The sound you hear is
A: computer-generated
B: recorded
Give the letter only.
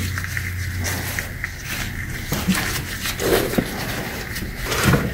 B